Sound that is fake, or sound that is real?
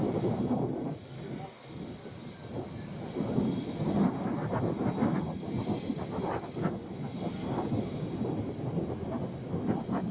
real